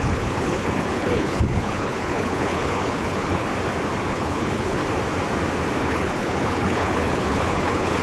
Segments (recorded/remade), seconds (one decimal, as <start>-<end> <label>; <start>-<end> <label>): 0.0-3.5 remade; 3.5-4.1 recorded; 4.1-4.8 remade; 4.8-5.8 recorded; 5.8-8.0 remade